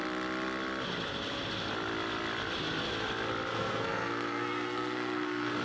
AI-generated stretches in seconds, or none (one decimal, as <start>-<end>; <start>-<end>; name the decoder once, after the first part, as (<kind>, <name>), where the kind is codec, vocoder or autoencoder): 3.5-5.6 (codec, SNAC)